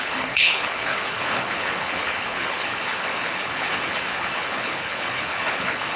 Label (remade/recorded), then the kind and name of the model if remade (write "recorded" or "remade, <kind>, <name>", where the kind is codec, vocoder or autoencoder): remade, codec, HILCodec